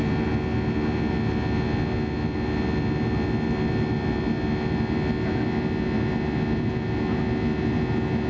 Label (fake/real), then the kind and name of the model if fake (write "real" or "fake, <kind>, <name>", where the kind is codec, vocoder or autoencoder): real